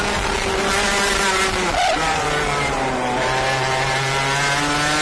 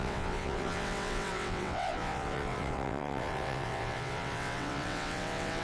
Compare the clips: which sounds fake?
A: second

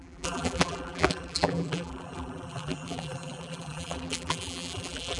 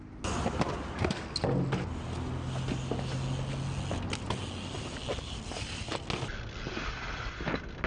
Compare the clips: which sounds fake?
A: first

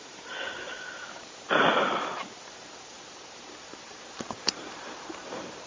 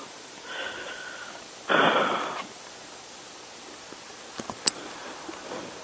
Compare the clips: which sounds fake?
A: first